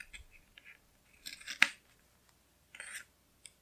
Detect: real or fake real